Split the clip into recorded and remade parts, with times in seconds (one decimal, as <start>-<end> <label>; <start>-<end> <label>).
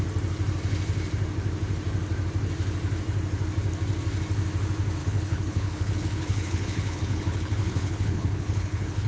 0.0-5.0 recorded; 5.0-9.1 remade